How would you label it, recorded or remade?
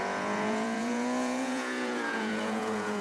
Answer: remade